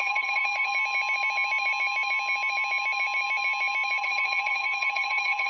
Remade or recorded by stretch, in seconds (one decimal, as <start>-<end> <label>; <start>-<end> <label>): 0.0-0.7 remade; 0.7-4.0 recorded; 4.0-5.5 remade